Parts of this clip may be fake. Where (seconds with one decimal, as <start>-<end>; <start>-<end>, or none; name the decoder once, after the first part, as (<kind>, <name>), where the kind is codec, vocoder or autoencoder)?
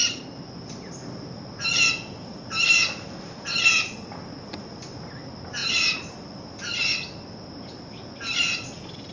0.0-0.7 (vocoder, BigVGAN v2)